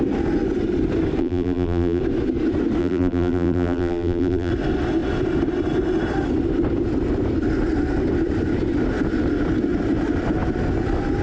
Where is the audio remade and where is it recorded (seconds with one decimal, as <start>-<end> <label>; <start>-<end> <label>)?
0.0-1.2 recorded; 1.2-2.0 remade; 2.0-2.8 recorded; 2.8-4.5 remade; 4.5-11.2 recorded